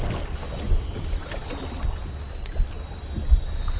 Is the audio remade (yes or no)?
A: no